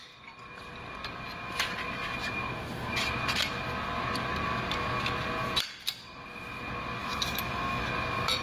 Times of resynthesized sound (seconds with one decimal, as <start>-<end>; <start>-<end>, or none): 7.0-7.9